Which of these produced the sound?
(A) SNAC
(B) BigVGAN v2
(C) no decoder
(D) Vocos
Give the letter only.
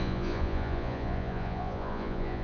D